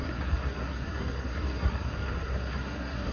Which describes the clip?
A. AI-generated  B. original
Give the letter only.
A